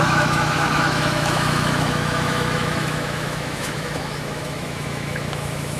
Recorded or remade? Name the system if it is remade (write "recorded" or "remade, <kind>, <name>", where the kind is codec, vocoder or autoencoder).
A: remade, autoencoder, DAC-VAE